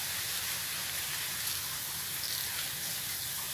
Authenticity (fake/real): real